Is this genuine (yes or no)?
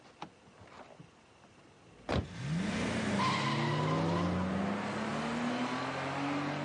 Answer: yes